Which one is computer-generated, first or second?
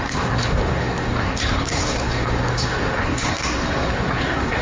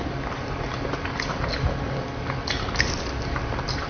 first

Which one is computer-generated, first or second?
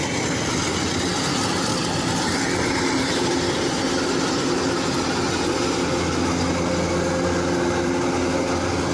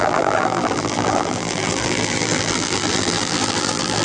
second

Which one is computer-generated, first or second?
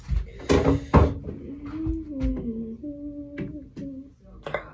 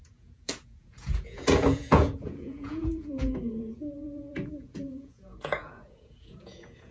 second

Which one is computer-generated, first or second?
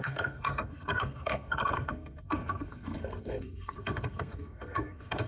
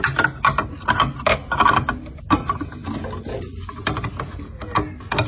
first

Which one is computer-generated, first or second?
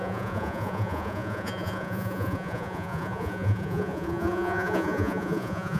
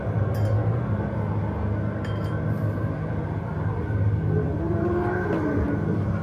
first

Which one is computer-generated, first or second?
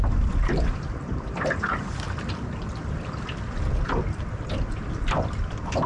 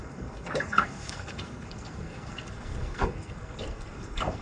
second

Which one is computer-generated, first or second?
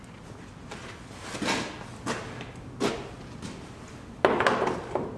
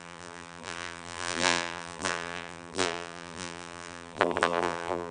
second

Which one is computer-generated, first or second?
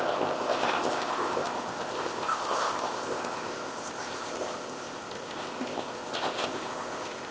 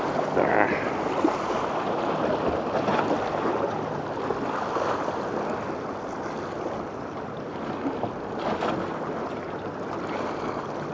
first